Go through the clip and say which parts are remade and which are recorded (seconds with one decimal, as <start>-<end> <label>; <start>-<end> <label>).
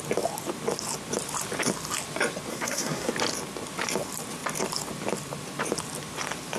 0.0-2.5 recorded; 2.5-3.1 remade; 3.1-6.6 recorded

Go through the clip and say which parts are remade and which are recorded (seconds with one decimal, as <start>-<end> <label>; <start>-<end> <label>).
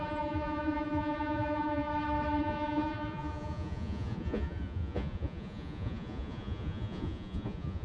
0.0-1.9 remade; 1.9-2.4 recorded; 2.4-7.8 remade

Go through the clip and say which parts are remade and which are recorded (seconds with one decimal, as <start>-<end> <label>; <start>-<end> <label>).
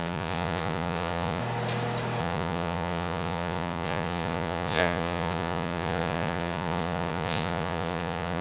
0.0-1.4 remade; 1.4-2.2 recorded; 2.2-8.4 remade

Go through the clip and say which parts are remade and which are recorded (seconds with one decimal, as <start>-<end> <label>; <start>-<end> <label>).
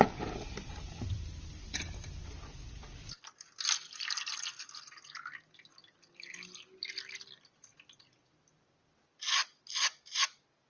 0.0-10.7 recorded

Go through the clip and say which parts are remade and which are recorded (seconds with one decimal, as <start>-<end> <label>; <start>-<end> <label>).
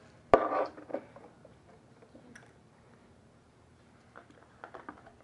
0.0-0.9 recorded; 0.9-4.0 remade; 4.0-5.2 recorded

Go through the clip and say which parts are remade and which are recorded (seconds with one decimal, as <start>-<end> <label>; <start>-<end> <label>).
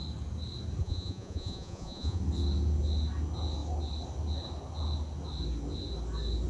0.0-0.8 recorded; 0.8-2.2 remade; 2.2-6.5 recorded